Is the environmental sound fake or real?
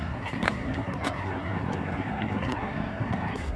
fake